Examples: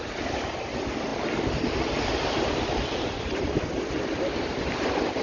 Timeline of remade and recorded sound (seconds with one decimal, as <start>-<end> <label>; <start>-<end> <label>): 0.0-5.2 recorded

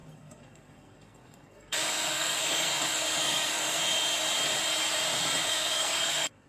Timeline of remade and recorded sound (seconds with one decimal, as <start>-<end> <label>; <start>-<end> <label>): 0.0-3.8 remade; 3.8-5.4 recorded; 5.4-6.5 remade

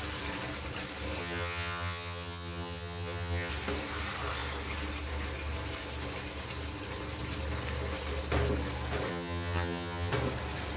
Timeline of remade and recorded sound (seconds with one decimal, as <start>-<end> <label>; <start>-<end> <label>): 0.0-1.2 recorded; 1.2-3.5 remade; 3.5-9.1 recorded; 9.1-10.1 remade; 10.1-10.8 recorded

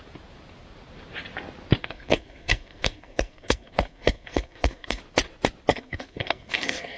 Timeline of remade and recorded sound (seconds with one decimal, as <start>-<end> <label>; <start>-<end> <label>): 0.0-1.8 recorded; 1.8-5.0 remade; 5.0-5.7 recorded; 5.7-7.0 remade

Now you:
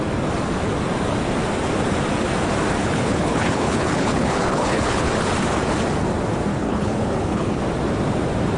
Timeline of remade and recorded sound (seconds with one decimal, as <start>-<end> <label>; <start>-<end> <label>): 0.0-2.8 recorded; 2.8-5.1 remade; 5.1-6.5 recorded; 6.5-7.6 remade; 7.6-8.6 recorded